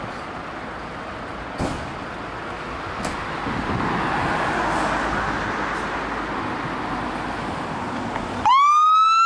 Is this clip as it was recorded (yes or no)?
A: yes